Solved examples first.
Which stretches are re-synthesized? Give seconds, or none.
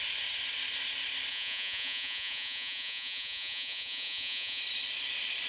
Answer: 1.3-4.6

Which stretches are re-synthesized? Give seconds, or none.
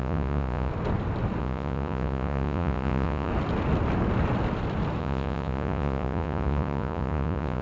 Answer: 0.0-0.7; 1.4-3.3; 5.0-7.6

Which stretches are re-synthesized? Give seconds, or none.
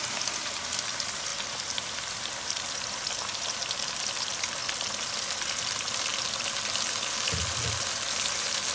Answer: 0.0-4.6; 5.6-6.1; 7.4-8.7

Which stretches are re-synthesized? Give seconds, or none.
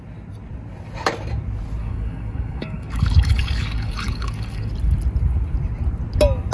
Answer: 1.8-4.7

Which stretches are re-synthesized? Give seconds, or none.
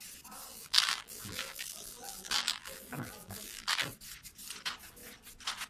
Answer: 0.5-3.9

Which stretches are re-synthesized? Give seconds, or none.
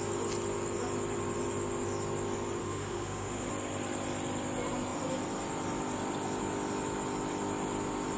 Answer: 2.6-3.5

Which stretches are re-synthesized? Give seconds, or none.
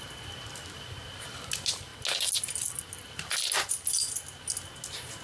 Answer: none